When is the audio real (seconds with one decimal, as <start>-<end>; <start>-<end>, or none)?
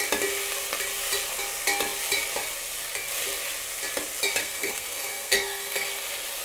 0.0-4.4; 5.9-6.4